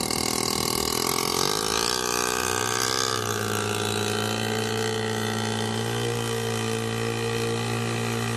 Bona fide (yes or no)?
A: yes